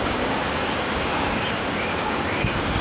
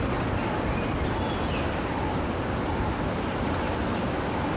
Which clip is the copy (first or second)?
first